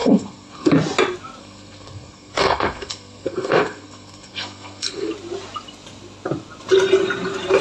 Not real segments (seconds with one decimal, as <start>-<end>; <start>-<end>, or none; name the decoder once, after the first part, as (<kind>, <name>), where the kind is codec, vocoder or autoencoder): 0.0-0.7 (codec, SNAC); 1.4-5.1